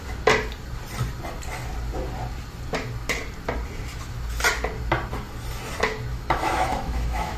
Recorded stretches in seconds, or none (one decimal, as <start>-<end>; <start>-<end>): 0.0-6.1